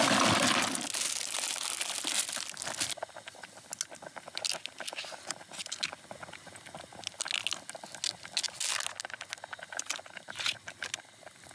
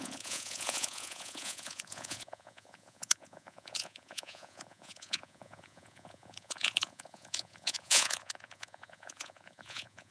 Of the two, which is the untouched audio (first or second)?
first